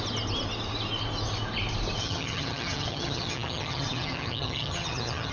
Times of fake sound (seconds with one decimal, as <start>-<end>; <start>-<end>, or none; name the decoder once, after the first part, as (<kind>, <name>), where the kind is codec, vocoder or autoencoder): 2.0-5.3 (vocoder, HiFi-GAN)